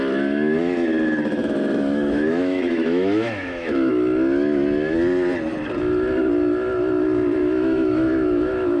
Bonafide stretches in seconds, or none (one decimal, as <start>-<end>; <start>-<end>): 0.0-1.4; 3.9-7.4